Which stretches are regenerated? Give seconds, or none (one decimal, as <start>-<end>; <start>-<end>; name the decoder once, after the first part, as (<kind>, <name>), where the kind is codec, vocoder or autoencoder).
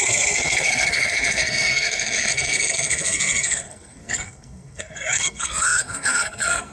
0.0-6.7 (codec, SNAC)